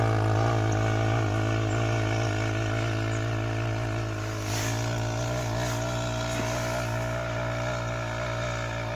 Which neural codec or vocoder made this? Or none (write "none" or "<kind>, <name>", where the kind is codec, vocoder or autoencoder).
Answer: none